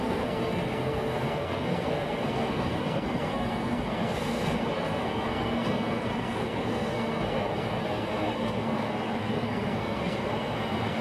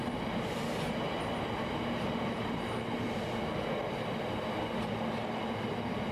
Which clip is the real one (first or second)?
second